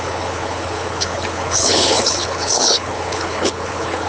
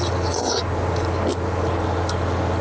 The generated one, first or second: first